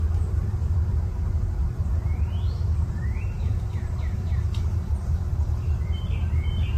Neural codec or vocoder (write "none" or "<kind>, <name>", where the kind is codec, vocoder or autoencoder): vocoder, BigVGAN v2